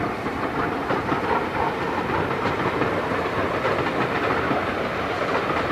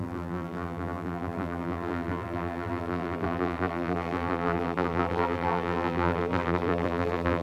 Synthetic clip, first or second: second